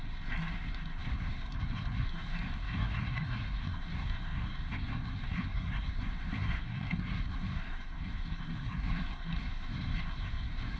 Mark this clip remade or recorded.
remade